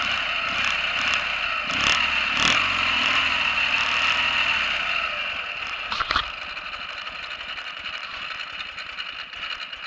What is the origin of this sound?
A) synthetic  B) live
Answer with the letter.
B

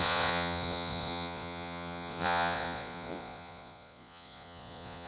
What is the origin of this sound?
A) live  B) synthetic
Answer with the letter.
B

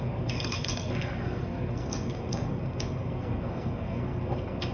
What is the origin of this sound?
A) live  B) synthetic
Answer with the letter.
B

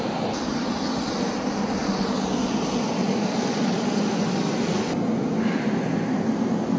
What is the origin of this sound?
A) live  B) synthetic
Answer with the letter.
A